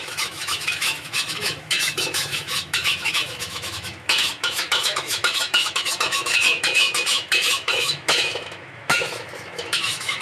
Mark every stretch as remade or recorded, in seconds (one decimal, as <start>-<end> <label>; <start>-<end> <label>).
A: 0.0-10.2 remade